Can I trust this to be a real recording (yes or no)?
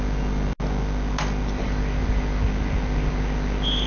yes